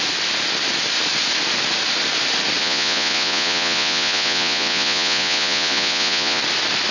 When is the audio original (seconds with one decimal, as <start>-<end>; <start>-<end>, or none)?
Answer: 0.0-2.6; 6.4-6.9